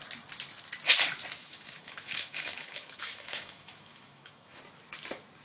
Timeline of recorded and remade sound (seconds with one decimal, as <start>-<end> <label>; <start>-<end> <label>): 0.0-1.4 recorded; 1.4-4.6 remade; 4.6-5.4 recorded